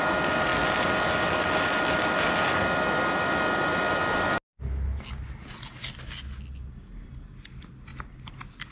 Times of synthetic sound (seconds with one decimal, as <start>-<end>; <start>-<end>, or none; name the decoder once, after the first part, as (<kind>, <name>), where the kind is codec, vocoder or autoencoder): none